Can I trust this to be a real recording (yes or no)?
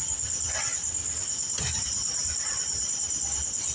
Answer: yes